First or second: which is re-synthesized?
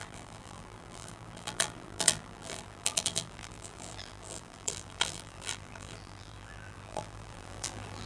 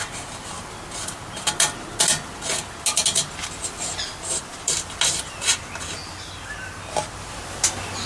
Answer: first